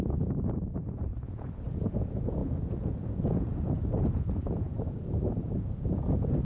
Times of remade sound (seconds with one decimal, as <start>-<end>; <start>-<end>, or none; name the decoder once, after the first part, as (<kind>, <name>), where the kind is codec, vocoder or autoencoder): 0.0-6.4 (vocoder, Vocos)

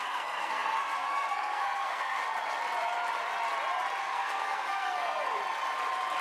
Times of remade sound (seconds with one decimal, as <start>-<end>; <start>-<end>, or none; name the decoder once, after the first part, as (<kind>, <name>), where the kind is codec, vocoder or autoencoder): 0.0-2.2 (codec, SNAC); 4.0-5.4